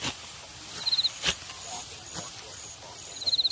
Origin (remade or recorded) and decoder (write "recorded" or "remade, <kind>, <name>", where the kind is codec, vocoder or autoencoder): recorded